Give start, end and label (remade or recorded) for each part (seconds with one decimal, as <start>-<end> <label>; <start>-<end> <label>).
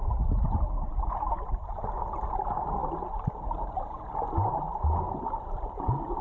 0.0-6.2 recorded